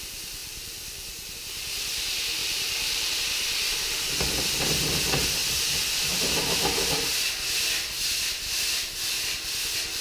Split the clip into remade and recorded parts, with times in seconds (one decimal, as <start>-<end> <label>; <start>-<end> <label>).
0.0-0.4 recorded; 0.4-1.3 remade; 1.3-2.4 recorded; 2.4-3.2 remade; 3.2-10.0 recorded